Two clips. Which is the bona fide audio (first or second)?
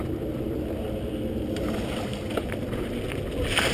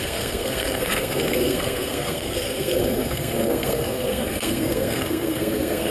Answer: first